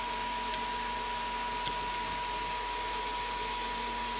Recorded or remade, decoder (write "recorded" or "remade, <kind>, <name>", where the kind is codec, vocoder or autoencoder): recorded